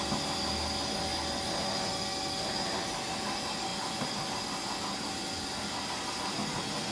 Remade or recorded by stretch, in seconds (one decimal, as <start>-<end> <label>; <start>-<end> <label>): 0.0-6.9 recorded

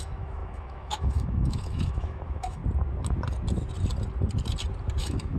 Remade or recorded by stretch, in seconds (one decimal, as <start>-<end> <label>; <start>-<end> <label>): 0.0-2.6 remade; 2.6-5.0 recorded; 5.0-5.4 remade

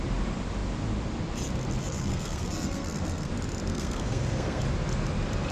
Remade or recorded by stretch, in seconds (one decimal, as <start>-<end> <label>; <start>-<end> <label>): 0.0-1.8 recorded; 1.8-3.3 remade; 3.3-3.7 recorded; 3.7-4.6 remade; 4.6-5.5 recorded

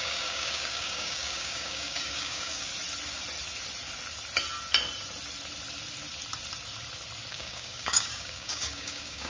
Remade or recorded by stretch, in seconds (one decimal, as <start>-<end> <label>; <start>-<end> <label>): 0.0-2.7 remade; 2.7-7.3 recorded; 7.3-9.3 remade

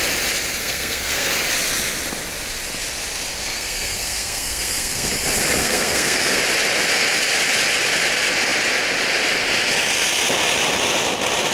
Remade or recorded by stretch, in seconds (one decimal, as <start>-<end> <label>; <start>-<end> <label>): 0.0-0.6 recorded; 0.6-1.3 remade; 1.3-3.4 recorded; 3.4-5.1 remade; 5.1-5.6 recorded; 5.6-6.4 remade; 6.4-11.5 recorded

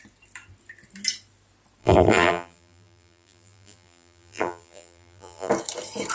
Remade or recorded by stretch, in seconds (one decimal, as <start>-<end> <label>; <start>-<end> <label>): 0.0-1.8 recorded; 1.8-5.5 remade; 5.5-6.1 recorded

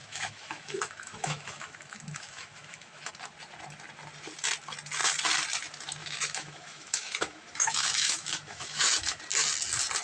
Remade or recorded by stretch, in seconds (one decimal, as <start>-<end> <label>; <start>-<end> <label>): 0.0-3.1 remade; 3.1-6.0 recorded; 6.0-9.2 remade; 9.2-10.0 recorded